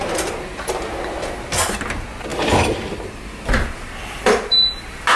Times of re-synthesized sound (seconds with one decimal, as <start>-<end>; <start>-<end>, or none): 2.3-5.2